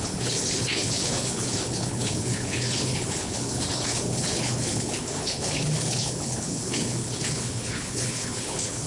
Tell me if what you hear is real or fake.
fake